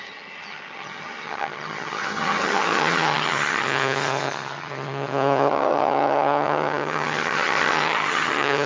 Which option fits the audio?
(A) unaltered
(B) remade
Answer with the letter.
B